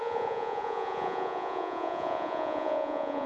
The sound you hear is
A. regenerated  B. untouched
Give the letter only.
A